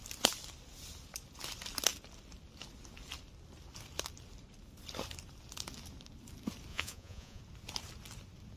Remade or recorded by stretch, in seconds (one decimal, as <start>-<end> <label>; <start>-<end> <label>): 0.0-6.7 recorded; 6.7-7.4 remade; 7.4-8.6 recorded